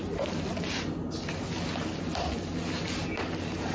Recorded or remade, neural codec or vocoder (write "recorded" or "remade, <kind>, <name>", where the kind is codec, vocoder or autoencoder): recorded